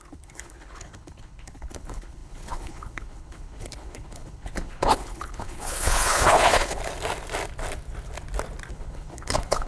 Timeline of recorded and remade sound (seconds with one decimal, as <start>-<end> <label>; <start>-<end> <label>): 0.0-6.8 remade; 6.8-8.7 recorded; 8.7-9.7 remade